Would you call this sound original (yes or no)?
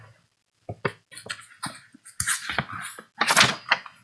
yes